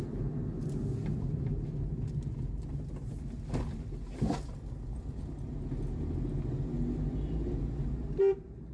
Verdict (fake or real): real